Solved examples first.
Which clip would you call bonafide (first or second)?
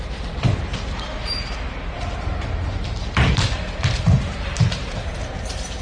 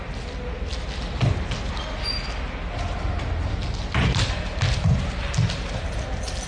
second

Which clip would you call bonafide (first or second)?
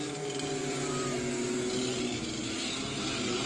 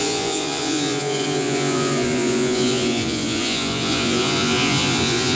first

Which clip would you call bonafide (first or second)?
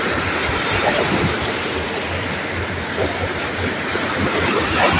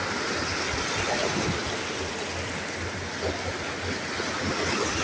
second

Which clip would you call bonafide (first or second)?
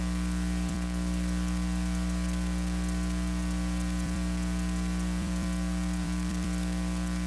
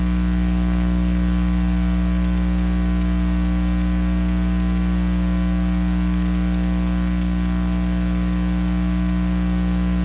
second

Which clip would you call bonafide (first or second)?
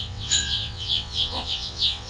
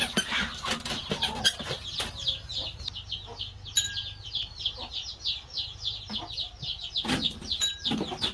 second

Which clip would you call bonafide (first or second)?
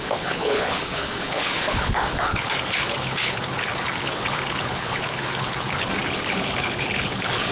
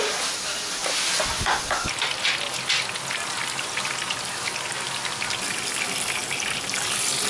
second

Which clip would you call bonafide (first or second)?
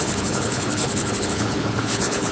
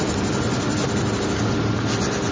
second